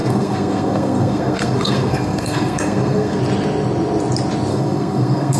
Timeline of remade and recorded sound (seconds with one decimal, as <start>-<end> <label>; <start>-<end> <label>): 0.0-3.2 remade; 3.2-4.5 recorded; 4.5-5.4 remade